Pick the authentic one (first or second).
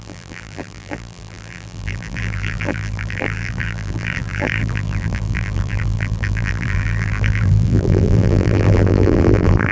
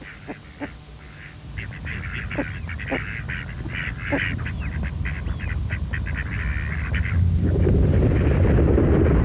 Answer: second